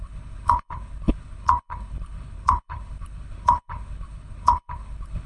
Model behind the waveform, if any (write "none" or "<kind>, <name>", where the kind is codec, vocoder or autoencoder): codec, HILCodec